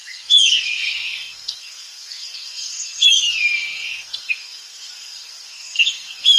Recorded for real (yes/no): no